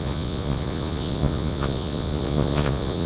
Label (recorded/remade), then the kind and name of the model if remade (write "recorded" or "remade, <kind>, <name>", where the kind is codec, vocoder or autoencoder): remade, vocoder, Vocos